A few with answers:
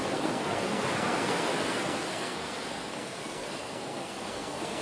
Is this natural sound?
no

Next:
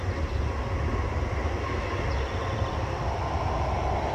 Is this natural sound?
yes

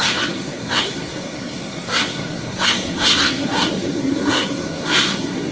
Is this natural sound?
no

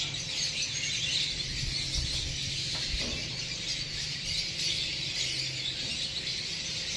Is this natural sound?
yes